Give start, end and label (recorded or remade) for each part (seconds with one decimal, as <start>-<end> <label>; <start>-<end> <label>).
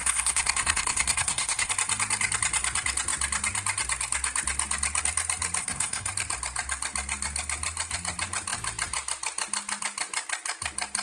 0.0-1.7 remade; 1.7-5.6 recorded; 5.6-6.1 remade; 6.1-11.0 recorded